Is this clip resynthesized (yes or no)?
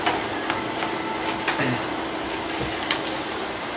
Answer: no